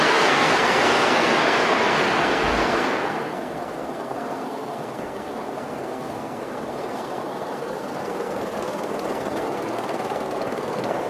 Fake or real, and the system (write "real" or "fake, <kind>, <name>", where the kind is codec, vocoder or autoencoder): fake, codec, SNAC